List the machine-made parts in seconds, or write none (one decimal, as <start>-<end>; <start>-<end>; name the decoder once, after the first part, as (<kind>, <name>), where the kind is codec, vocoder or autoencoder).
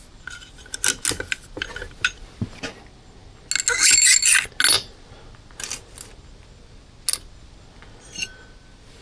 none